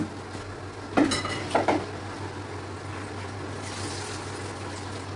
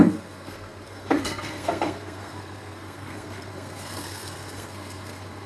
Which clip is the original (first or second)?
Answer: first